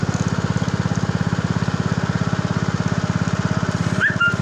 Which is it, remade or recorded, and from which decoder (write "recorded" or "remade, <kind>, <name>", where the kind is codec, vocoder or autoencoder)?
recorded